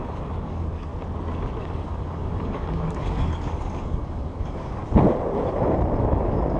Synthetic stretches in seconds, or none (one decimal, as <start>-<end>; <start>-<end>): 0.0-0.9; 1.6-4.8; 6.0-6.6